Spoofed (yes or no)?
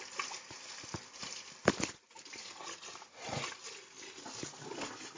no